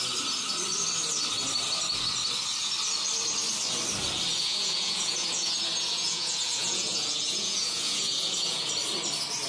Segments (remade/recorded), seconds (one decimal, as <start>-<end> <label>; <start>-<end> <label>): 0.0-4.3 recorded; 4.3-8.7 remade; 8.7-9.5 recorded